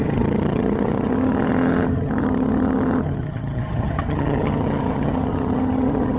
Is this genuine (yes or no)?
no